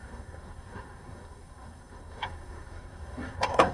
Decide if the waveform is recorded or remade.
remade